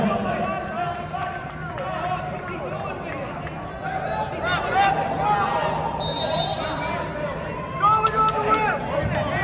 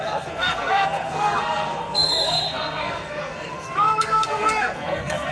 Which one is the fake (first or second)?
second